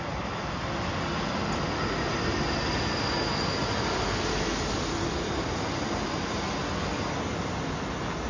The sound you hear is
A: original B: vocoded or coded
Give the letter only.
A